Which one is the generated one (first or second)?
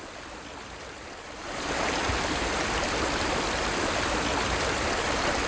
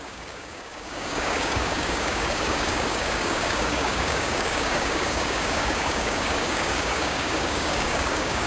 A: second